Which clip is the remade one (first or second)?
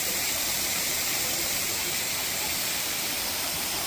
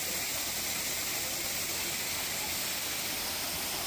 first